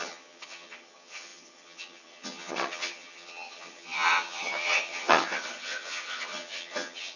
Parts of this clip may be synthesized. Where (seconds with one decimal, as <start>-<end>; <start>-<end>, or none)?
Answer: 0.0-7.2